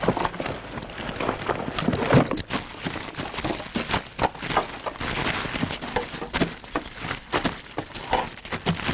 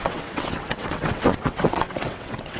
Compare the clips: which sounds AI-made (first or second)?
second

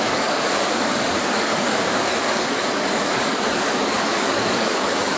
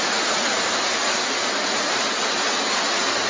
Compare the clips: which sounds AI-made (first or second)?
first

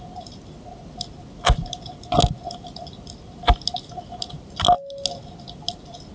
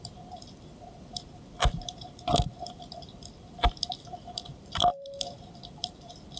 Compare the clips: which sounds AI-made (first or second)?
second